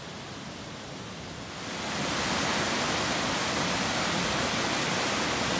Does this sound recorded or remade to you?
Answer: recorded